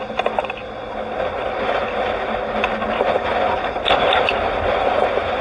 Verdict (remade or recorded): recorded